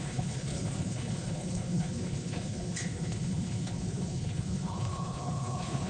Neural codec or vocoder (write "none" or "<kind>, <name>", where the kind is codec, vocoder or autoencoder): codec, HILCodec